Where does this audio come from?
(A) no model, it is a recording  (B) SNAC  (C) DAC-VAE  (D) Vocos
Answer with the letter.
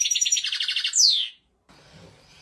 A